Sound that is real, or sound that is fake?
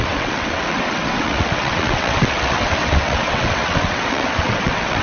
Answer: fake